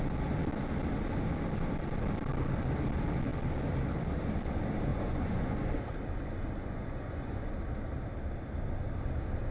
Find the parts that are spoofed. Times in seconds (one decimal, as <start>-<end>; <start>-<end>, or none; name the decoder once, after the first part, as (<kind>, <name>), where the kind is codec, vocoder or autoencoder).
4.9-5.7 (vocoder, Vocos); 6.6-7.5